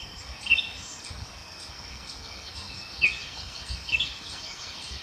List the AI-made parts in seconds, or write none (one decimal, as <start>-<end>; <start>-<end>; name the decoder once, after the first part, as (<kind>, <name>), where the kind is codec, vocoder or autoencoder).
0.0-5.0 (codec, SNAC)